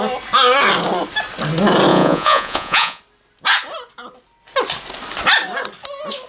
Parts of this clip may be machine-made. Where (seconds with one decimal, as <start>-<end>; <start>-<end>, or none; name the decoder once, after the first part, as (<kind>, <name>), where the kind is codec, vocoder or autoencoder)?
1.9-3.0 (vocoder, Vocos)

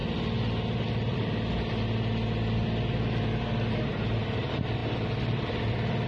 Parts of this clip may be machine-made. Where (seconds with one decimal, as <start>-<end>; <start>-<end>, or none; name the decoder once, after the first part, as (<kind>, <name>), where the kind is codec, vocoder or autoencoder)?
3.7-6.1 (vocoder, BigVGAN v2)

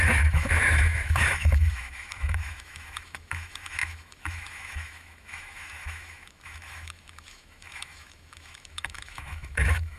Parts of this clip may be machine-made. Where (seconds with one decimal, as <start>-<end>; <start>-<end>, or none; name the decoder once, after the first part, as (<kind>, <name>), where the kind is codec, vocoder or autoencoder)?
0.0-10.0 (autoencoder, DAC-VAE)

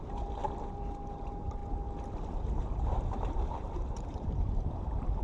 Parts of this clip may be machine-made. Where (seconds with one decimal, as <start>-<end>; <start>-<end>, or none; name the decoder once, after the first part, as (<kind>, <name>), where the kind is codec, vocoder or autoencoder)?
0.0-0.4 (vocoder, BigVGAN v2); 1.1-1.6; 2.6-5.2

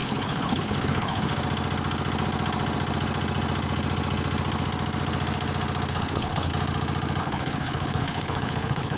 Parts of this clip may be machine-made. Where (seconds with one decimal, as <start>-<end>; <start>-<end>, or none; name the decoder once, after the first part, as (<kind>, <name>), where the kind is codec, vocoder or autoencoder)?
0.0-1.3 (codec, HILCodec); 5.9-6.5; 7.2-9.0

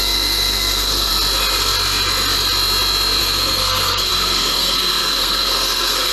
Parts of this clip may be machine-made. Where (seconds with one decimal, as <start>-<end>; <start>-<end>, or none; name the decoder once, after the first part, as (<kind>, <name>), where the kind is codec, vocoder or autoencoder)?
0.0-1.1 (codec, SNAC); 3.2-6.1

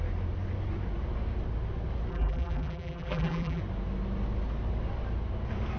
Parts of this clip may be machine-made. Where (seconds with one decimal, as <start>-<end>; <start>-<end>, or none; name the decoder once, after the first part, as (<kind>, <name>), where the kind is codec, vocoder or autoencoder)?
2.1-3.6 (vocoder, BigVGAN v2)

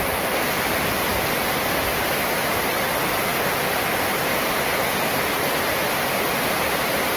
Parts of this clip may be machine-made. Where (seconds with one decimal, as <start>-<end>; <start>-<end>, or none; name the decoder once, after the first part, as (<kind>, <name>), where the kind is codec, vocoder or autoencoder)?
none